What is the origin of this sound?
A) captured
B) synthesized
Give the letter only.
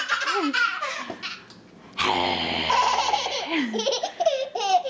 A